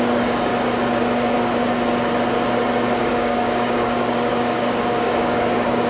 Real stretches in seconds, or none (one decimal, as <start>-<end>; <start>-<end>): 0.5-3.0